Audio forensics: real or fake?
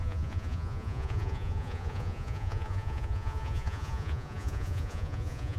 fake